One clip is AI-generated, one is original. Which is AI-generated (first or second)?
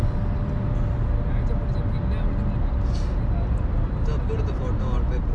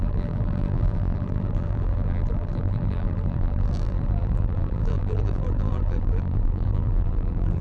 second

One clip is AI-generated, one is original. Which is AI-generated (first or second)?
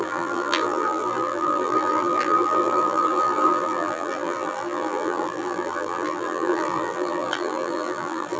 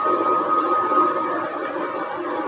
first